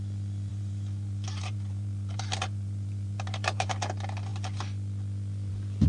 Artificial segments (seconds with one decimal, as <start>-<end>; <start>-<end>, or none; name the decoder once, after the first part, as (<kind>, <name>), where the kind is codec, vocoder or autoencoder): 0.5-3.7 (vocoder, BigVGAN v2)

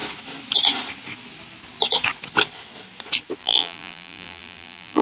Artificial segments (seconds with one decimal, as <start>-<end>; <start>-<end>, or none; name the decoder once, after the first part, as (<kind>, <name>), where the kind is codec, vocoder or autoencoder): 3.4-5.0 (vocoder, BigVGAN v2)